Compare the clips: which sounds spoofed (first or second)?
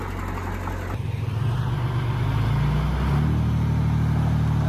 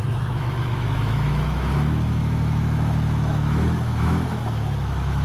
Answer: second